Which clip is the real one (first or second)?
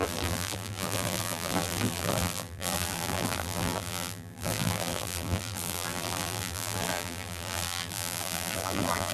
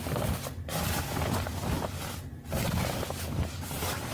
second